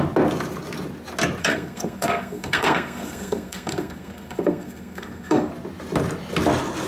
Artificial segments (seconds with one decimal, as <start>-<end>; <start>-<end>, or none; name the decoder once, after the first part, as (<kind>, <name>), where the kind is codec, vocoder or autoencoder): 1.4-5.5 (codec, SNAC)